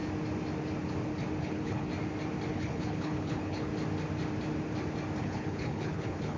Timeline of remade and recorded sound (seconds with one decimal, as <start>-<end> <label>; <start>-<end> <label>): 0.0-1.4 recorded; 1.4-1.9 remade; 1.9-2.5 recorded; 2.5-3.7 remade; 3.7-5.2 recorded; 5.2-6.4 remade

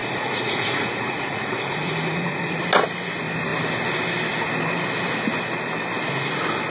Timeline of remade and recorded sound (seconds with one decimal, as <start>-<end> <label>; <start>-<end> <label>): 0.0-2.6 remade; 2.6-6.7 recorded

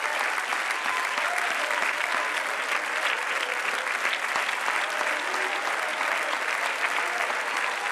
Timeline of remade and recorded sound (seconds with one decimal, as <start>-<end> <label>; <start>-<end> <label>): 0.0-7.9 recorded

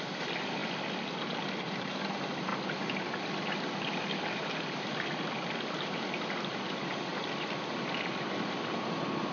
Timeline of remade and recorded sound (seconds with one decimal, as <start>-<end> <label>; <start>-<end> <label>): 0.0-0.6 remade; 0.6-1.4 recorded; 1.4-2.5 remade; 2.5-3.4 recorded; 3.4-7.1 remade; 7.1-8.0 recorded; 8.0-9.3 remade

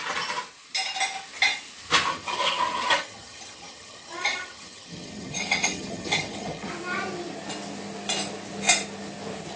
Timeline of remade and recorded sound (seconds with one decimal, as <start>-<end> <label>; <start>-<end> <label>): 0.0-2.1 recorded; 2.1-6.7 remade; 6.7-9.6 recorded

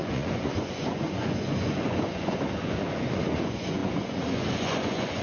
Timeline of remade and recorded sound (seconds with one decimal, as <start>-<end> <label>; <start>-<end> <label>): 0.0-5.2 remade

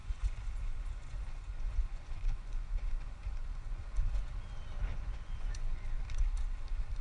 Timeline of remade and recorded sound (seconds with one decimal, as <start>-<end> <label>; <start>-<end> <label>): 0.0-4.2 remade; 4.2-4.9 recorded; 4.9-6.0 remade; 6.0-7.0 recorded